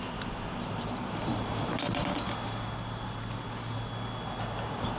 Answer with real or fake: real